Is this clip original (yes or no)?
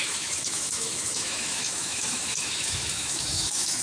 no